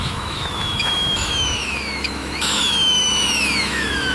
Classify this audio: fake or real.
fake